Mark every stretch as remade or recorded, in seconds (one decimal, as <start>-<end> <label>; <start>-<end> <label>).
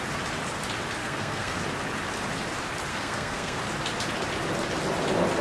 0.0-1.0 recorded; 1.0-1.6 remade; 1.6-2.9 recorded; 2.9-3.6 remade; 3.6-5.4 recorded